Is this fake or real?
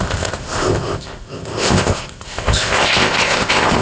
fake